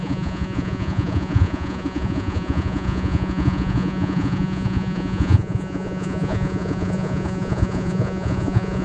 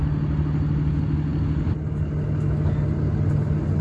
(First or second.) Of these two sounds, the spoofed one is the first